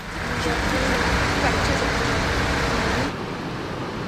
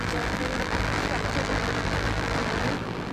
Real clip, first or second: first